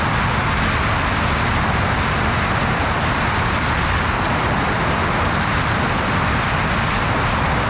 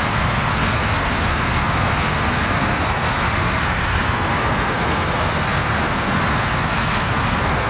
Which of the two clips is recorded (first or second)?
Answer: first